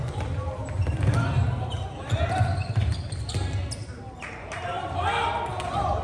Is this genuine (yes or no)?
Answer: yes